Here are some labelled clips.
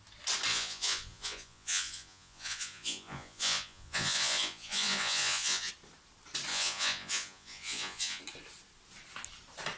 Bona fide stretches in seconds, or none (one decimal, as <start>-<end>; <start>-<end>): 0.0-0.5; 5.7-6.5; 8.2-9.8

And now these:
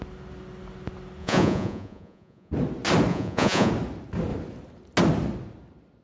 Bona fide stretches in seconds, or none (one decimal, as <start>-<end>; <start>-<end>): 0.0-1.2; 2.5-3.1; 3.7-6.0

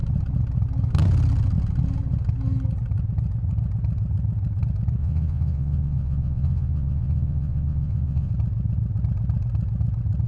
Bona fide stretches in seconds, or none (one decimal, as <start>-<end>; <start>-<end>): 0.0-5.0; 8.3-10.3

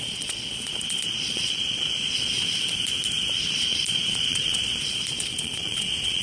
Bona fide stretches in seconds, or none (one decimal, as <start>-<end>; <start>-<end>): 2.4-3.5

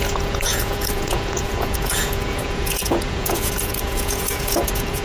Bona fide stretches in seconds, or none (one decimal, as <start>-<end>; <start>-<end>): none

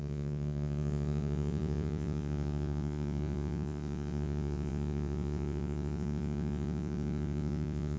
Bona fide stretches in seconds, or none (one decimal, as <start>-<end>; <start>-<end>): none

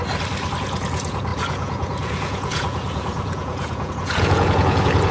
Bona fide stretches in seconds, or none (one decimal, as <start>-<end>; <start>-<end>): 0.0-0.6